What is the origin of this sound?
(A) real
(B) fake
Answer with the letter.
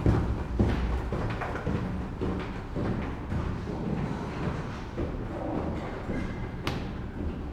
A